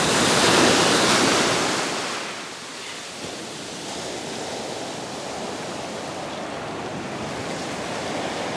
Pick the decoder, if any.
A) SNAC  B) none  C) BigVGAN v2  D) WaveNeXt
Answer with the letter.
B